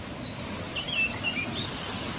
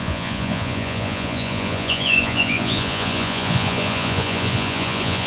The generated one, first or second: second